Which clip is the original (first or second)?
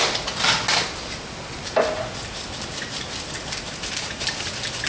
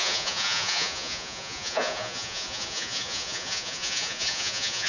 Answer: first